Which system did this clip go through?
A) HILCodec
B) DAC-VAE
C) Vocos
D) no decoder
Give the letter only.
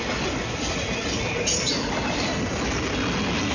D